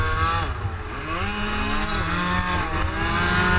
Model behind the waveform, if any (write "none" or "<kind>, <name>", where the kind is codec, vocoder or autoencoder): none